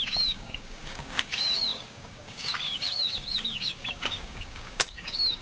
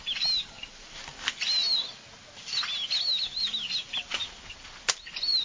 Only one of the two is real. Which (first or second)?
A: second